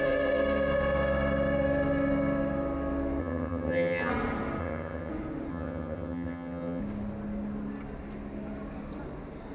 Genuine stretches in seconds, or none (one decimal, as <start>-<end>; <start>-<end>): 0.0-3.2; 4.1-4.6; 5.1-5.5; 6.8-9.5